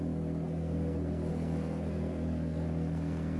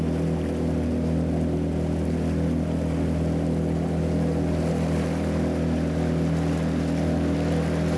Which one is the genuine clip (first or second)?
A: second